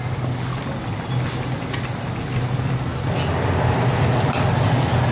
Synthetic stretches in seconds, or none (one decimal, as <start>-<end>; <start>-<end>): none